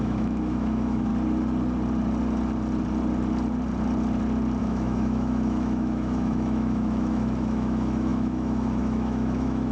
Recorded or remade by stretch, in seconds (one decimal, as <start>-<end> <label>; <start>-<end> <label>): 0.0-1.1 remade; 1.1-4.6 recorded; 4.6-9.7 remade